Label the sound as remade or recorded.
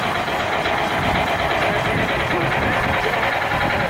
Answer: recorded